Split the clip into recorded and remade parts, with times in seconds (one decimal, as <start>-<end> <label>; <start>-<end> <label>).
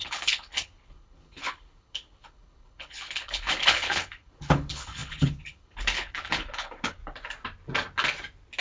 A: 0.0-7.0 remade; 7.0-8.6 recorded